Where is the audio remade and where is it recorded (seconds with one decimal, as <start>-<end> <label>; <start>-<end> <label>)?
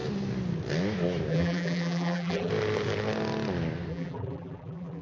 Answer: 0.0-1.3 recorded; 1.3-2.5 remade; 2.5-3.9 recorded; 3.9-5.0 remade